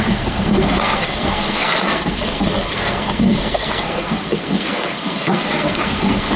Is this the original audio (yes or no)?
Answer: no